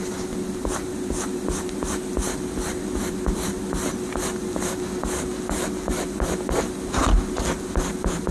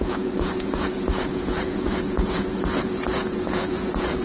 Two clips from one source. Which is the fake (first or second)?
second